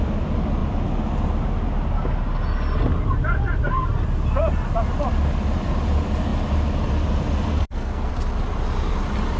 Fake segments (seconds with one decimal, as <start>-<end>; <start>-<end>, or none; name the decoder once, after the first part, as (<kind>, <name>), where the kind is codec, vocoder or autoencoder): 7.5-8.1 (codec, SNAC)